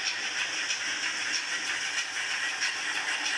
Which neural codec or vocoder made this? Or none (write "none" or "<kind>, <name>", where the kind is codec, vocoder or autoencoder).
none